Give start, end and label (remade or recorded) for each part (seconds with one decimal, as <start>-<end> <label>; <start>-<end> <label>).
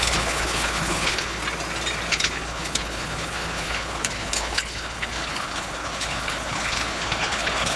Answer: 0.0-1.4 remade; 1.4-2.1 recorded; 2.1-7.8 remade